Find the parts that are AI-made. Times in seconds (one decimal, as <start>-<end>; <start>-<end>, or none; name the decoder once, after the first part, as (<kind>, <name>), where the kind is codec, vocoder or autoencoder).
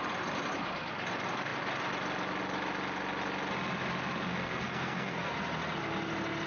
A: 4.3-5.3 (codec, SNAC)